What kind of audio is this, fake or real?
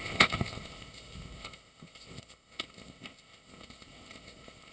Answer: fake